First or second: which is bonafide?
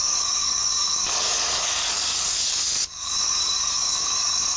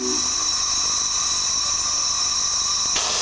second